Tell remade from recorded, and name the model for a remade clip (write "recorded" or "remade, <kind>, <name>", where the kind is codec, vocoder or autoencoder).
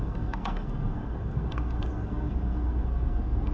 remade, codec, SNAC